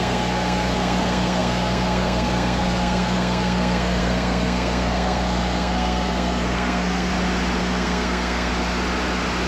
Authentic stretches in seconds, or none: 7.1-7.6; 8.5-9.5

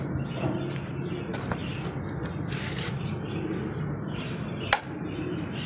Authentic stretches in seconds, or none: 0.0-5.7

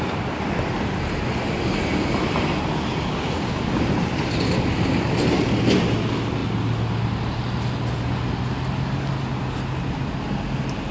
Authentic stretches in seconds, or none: 0.0-10.9

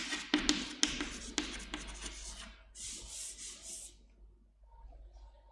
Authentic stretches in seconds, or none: 0.0-5.5

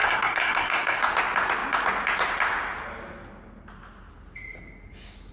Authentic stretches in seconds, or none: 1.0-5.3

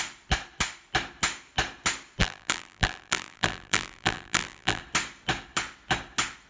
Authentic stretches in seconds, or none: 0.0-2.2; 4.8-6.5